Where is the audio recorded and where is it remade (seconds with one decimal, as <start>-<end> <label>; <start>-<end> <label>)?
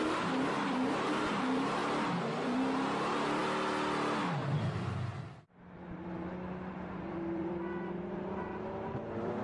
0.0-1.8 remade; 1.8-2.3 recorded; 2.3-3.4 remade; 3.4-6.7 recorded; 6.7-9.4 remade